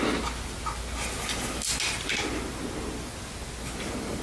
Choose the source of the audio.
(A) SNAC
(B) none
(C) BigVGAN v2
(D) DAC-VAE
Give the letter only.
B